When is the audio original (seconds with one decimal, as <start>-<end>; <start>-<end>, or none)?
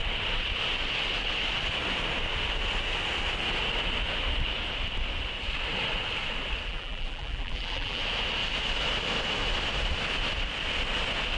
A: 0.0-6.7; 8.0-11.4